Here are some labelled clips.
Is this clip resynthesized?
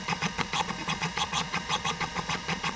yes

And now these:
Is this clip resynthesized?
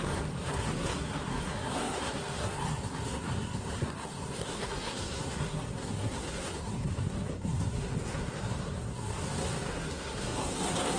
yes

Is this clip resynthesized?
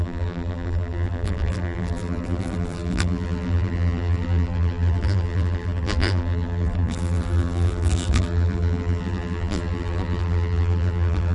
yes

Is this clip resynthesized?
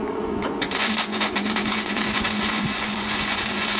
yes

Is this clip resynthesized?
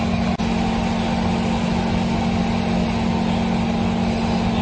no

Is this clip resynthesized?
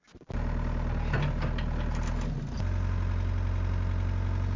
no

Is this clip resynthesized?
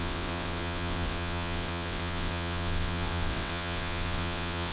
yes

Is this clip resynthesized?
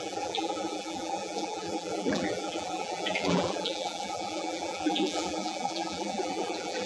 yes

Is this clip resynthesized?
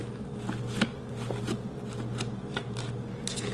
no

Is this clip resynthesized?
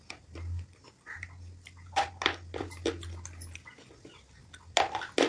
no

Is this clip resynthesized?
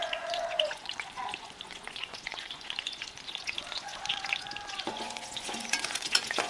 yes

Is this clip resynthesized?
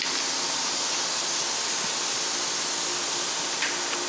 no